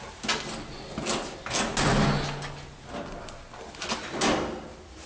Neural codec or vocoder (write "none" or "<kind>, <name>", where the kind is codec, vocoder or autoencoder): none